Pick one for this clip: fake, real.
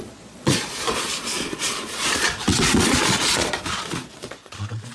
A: fake